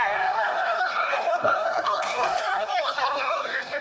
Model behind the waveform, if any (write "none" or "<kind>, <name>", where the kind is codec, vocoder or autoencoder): codec, SNAC